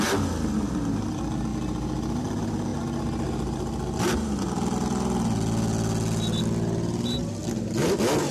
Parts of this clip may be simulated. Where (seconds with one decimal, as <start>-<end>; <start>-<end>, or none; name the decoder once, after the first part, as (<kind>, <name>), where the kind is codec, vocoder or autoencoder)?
none